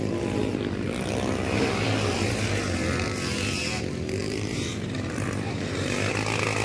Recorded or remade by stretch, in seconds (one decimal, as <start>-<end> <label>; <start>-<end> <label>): 0.0-4.2 recorded; 4.2-6.1 remade; 6.1-6.6 recorded